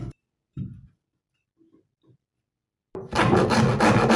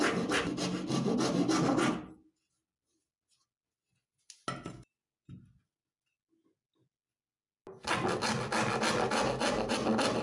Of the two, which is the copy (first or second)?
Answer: first